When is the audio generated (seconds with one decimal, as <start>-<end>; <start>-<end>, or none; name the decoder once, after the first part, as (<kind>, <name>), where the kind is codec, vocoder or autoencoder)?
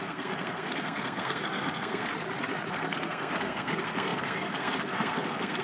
0.0-2.1 (codec, SNAC); 2.7-5.6